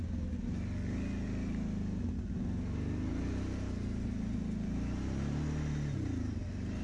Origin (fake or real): real